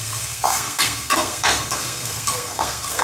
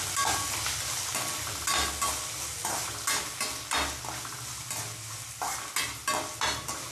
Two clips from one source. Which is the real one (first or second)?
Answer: second